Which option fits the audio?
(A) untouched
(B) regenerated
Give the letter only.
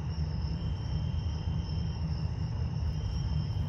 B